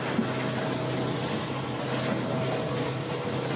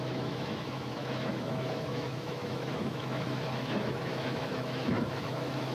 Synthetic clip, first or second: second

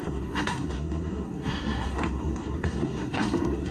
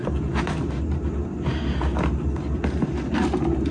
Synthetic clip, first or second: first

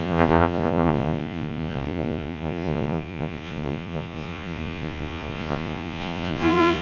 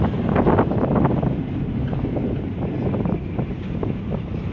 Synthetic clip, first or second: first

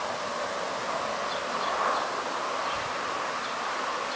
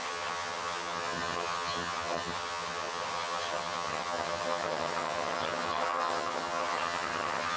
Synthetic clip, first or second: second